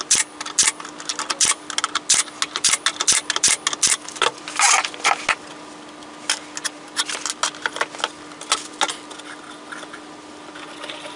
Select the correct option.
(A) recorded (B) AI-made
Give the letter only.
A